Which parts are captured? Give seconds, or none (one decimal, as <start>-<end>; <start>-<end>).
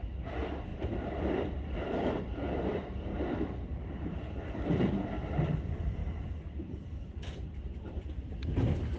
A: 0.0-0.7; 2.2-3.1; 4.9-6.0; 8.0-9.0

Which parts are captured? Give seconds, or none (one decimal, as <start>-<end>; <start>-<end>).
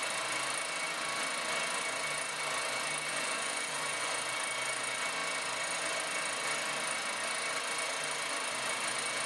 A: 0.0-3.1; 4.1-9.3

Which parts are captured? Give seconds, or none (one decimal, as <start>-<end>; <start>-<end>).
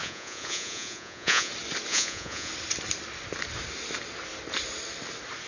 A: 1.5-1.9; 2.5-5.5